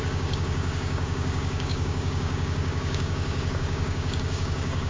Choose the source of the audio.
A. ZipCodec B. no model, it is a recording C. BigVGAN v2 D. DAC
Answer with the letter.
D